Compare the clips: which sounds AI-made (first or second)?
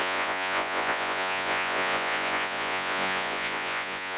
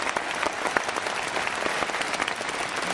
first